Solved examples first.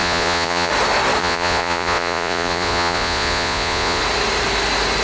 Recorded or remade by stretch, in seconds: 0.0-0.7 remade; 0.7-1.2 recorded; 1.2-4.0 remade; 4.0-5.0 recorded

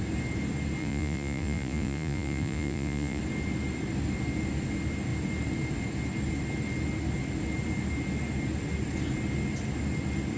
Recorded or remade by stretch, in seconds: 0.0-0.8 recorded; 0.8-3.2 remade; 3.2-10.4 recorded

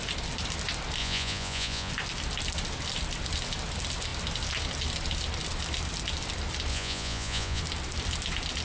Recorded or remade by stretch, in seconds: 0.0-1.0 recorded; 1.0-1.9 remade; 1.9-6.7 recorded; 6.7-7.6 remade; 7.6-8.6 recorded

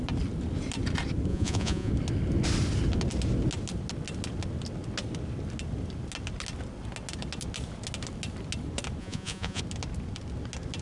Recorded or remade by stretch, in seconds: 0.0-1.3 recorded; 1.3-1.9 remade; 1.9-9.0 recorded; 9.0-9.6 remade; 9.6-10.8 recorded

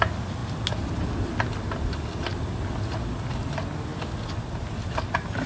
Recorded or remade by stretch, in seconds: 0.0-5.5 recorded

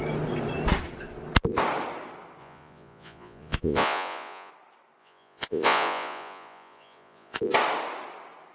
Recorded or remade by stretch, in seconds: 0.0-2.4 recorded; 2.4-4.5 remade; 4.5-5.0 recorded; 5.0-7.4 remade; 7.4-8.5 recorded

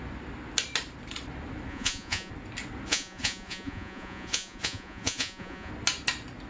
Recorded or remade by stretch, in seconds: 0.0-1.7 recorded; 1.7-2.3 remade; 2.3-2.9 recorded; 2.9-5.7 remade; 5.7-6.5 recorded